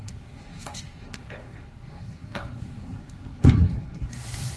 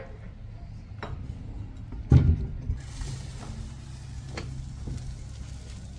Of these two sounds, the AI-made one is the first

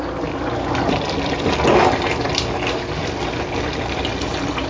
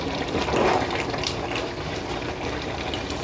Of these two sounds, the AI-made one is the second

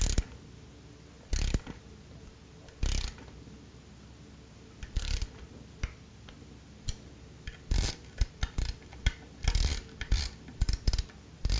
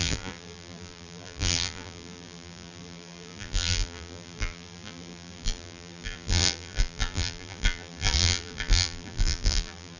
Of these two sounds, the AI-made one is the second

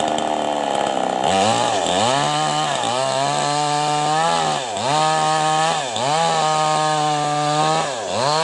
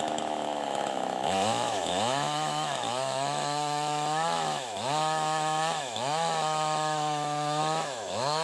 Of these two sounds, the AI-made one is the second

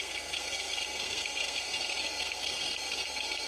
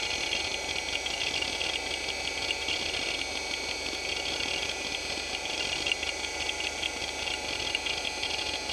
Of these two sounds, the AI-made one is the first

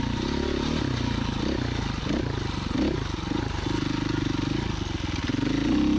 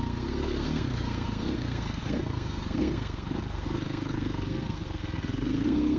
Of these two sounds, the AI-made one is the second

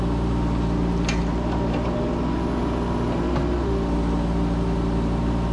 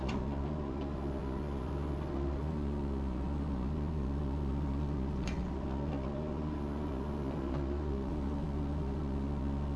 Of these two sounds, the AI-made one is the second